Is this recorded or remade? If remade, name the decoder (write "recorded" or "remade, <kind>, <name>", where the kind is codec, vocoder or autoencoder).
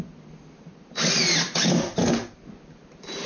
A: recorded